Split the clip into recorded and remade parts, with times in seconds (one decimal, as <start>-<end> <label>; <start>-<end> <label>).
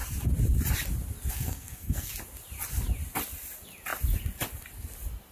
0.0-1.3 recorded; 1.3-2.1 remade; 2.1-5.3 recorded